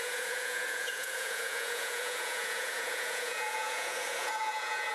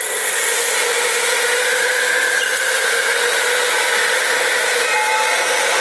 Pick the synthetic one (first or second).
first